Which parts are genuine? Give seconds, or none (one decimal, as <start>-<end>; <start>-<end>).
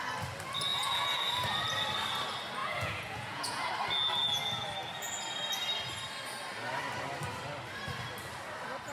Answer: 0.0-0.7; 1.2-2.6; 3.7-8.9